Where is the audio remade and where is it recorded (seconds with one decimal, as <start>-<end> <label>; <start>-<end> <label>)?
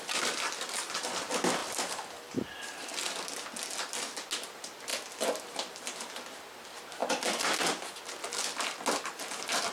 0.0-1.6 recorded; 1.6-2.9 remade; 2.9-4.9 recorded; 4.9-6.4 remade; 6.4-7.0 recorded; 7.0-8.0 remade; 8.0-9.7 recorded